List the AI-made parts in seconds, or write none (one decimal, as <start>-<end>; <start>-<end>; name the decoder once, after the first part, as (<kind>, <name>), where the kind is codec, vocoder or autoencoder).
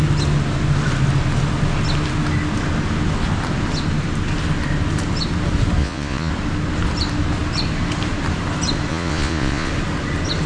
5.8-6.3 (vocoder, Vocos); 8.9-9.7